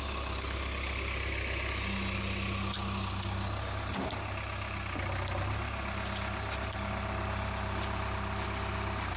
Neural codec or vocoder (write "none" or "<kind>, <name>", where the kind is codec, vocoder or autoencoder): none